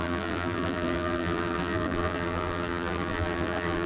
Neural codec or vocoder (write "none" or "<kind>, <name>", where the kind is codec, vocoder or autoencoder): vocoder, BigVGAN v2